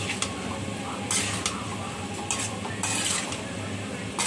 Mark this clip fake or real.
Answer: real